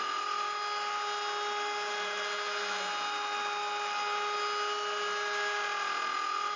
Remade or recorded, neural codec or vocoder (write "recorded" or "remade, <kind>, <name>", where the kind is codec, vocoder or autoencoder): recorded